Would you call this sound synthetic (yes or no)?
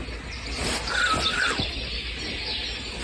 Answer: no